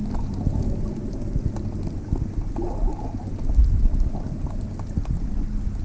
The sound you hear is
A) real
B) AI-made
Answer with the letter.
A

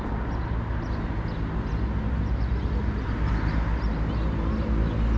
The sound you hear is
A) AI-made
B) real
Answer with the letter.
B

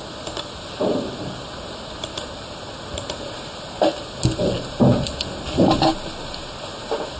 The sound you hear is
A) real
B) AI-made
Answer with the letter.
A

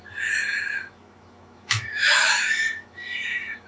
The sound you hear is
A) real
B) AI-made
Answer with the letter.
B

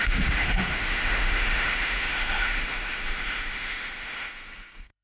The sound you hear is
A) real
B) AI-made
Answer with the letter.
B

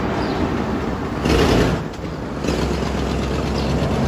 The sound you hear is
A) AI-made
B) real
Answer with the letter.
B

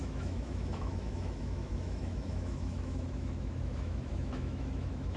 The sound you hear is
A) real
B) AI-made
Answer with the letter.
B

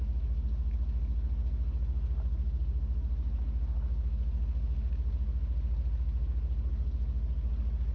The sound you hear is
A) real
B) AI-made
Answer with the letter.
A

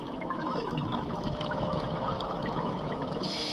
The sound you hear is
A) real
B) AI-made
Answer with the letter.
B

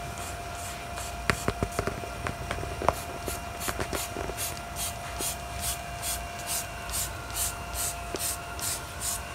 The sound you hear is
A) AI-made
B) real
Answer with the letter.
B